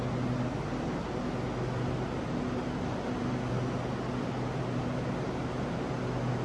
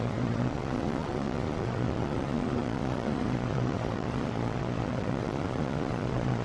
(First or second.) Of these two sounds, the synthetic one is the second